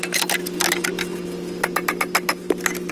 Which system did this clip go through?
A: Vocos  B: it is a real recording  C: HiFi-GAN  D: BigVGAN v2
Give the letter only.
B